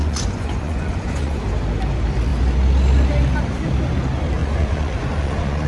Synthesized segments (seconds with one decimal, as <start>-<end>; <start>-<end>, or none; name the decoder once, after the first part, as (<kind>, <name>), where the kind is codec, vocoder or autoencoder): 0.0-1.4 (vocoder, Vocos); 4.4-5.7